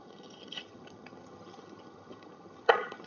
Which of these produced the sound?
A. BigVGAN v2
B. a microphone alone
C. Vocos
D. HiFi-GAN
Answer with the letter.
D